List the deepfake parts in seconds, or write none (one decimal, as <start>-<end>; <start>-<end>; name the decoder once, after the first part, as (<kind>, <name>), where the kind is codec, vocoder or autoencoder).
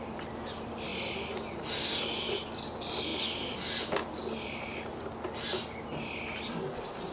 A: none